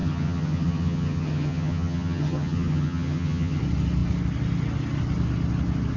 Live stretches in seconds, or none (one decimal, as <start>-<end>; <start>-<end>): 3.6-6.0